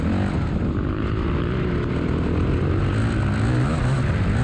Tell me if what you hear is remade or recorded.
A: recorded